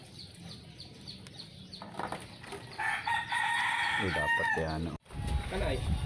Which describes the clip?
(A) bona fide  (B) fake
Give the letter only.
A